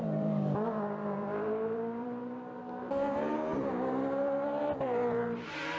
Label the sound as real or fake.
fake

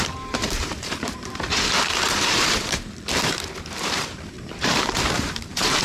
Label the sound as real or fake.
fake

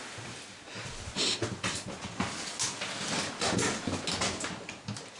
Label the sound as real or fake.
real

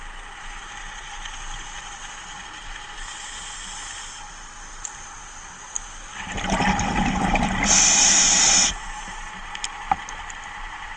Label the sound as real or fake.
real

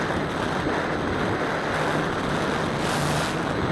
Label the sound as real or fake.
real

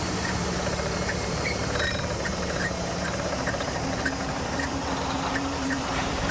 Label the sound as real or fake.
fake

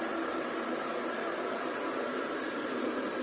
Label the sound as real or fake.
fake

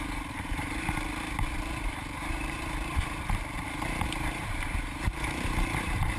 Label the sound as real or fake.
fake